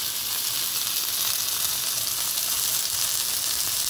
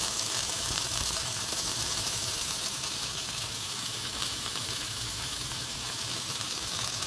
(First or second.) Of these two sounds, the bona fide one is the first